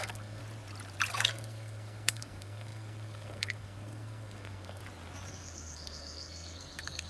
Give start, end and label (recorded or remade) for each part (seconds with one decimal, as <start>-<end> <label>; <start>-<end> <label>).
0.0-0.4 remade; 0.4-1.1 recorded; 1.1-4.8 remade; 4.8-5.3 recorded; 5.3-7.1 remade